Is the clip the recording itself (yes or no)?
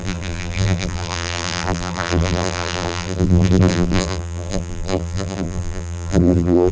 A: no